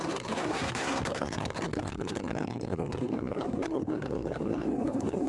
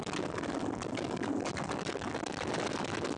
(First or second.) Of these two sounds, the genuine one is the second